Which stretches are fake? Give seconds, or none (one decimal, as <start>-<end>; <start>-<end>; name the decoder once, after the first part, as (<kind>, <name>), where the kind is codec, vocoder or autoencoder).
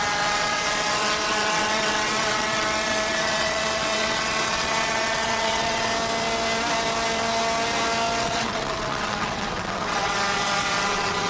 0.0-5.9 (vocoder, WaveNeXt); 8.2-11.3